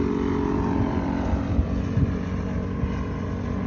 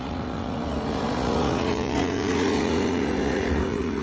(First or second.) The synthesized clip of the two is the second